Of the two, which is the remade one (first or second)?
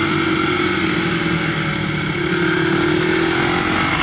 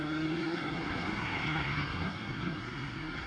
second